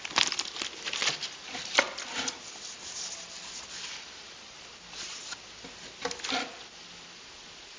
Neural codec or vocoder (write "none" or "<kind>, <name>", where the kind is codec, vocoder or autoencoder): none